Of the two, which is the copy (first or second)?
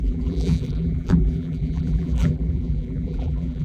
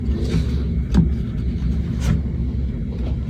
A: first